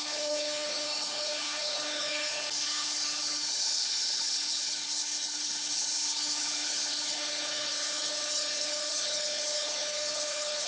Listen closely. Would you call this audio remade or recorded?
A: remade